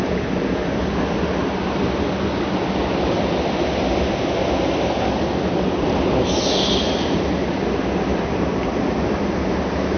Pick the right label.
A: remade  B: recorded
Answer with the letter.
B